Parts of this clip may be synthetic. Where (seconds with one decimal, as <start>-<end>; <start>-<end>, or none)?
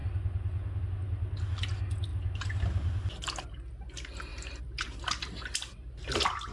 4.3-5.0